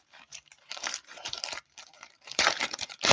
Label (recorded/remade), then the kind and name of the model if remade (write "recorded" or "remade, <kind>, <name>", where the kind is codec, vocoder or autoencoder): remade, vocoder, BigVGAN v2